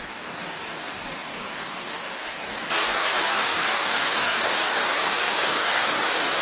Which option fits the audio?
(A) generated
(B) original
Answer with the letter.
A